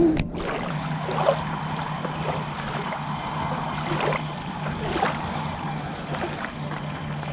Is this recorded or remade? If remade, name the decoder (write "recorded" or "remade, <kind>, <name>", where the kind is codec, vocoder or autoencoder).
recorded